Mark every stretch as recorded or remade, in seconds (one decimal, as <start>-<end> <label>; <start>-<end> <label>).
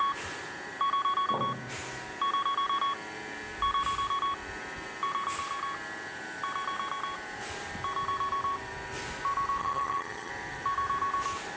0.0-9.6 recorded; 9.6-10.3 remade; 10.3-11.6 recorded